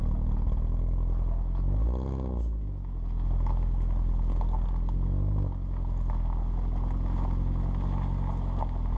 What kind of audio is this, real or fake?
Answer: real